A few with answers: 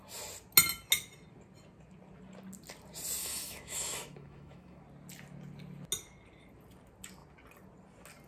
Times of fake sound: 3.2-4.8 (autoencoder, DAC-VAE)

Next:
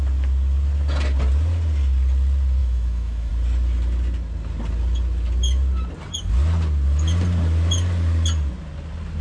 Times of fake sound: 2.6-3.3 (autoencoder, DAC-VAE)

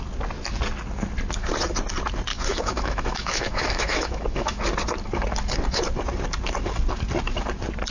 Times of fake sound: 2.3-4.6 (autoencoder, DAC-VAE)